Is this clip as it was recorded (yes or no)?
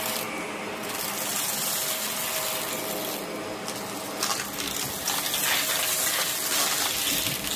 yes